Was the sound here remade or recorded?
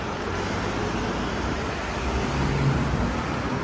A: recorded